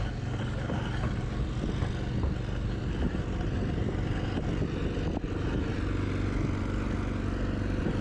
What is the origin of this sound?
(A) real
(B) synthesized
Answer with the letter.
A